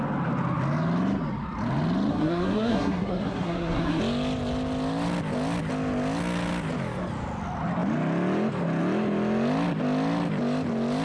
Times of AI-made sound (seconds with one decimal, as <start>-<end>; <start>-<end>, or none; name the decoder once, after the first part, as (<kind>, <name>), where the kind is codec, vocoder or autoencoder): 2.1-4.0 (codec, SNAC)